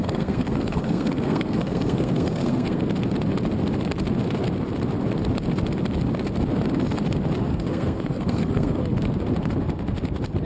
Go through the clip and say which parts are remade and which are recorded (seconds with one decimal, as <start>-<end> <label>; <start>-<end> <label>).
0.0-2.8 remade; 2.8-7.5 recorded; 7.5-8.8 remade; 8.8-10.5 recorded